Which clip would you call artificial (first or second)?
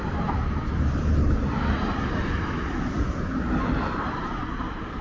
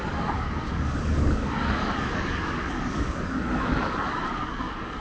second